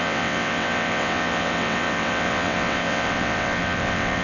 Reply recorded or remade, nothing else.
remade